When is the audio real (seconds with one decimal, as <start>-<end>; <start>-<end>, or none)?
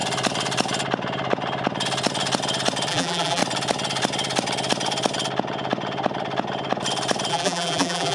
0.0-2.9; 3.4-7.3